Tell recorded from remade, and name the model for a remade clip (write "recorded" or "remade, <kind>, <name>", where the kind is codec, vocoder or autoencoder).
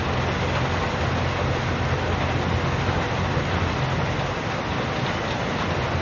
recorded